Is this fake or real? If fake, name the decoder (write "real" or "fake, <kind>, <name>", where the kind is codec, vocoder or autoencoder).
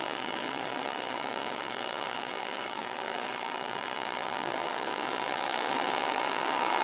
fake, vocoder, WaveNeXt